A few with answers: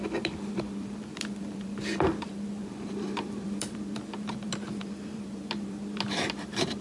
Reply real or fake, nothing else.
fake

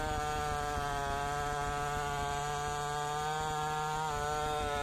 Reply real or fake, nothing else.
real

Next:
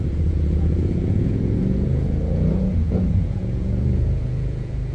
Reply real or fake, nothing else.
fake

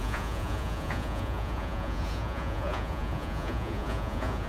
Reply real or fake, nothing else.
fake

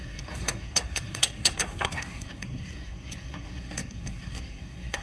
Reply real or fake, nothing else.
fake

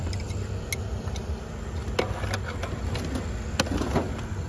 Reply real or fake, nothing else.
real